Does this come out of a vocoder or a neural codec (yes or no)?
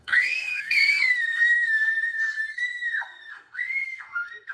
yes